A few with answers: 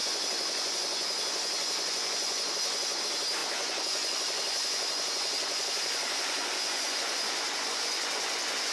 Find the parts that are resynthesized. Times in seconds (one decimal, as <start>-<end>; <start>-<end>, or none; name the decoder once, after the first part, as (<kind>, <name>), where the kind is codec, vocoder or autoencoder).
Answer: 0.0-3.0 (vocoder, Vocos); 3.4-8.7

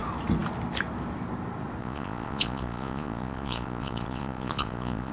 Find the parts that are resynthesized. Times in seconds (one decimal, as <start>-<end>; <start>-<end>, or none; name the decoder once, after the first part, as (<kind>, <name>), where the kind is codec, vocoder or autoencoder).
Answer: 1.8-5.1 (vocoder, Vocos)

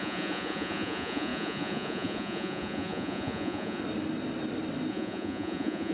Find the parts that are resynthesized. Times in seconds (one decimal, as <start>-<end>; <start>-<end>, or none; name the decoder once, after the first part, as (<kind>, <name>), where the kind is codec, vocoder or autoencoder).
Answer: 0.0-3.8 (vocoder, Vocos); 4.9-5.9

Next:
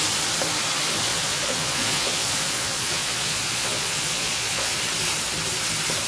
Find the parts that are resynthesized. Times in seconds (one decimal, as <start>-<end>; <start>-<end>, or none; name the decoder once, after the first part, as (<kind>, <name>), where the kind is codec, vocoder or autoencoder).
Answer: 1.1-4.8 (vocoder, Vocos)

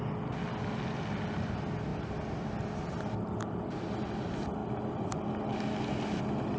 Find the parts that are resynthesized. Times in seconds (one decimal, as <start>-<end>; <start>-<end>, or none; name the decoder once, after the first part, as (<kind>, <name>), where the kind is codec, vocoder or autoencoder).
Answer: none